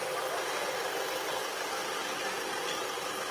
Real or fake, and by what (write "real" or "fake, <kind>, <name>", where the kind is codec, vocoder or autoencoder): real